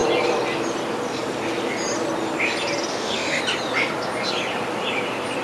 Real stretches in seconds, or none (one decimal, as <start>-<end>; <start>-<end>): 0.0-2.9; 3.4-5.4